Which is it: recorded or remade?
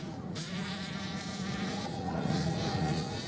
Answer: remade